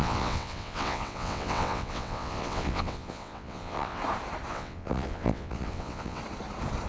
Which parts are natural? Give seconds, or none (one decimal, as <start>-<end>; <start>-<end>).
4.0-4.5; 6.2-6.9